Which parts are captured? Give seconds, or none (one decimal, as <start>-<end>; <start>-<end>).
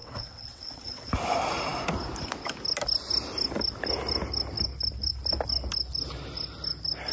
1.1-7.1